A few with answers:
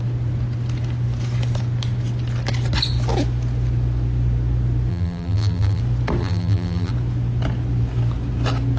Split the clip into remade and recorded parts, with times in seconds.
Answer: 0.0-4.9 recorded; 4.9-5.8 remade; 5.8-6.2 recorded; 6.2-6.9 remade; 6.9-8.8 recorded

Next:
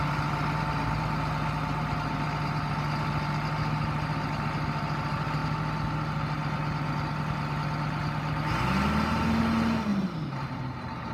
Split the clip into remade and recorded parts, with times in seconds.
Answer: 0.0-9.9 recorded; 9.9-11.1 remade

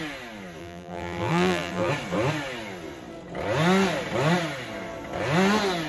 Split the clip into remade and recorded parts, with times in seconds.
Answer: 0.0-0.6 recorded; 0.6-1.9 remade; 1.9-5.9 recorded

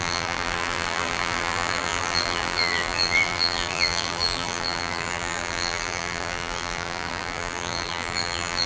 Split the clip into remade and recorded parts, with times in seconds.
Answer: 0.0-8.7 remade

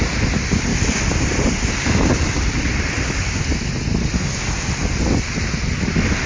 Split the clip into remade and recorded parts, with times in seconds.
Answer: 0.0-3.5 remade; 3.5-5.5 recorded; 5.5-6.3 remade